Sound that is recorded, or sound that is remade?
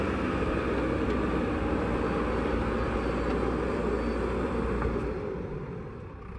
recorded